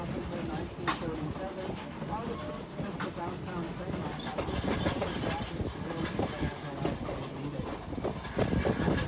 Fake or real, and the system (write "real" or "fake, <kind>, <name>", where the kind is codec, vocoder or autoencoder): real